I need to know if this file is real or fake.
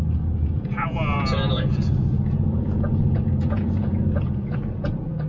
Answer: fake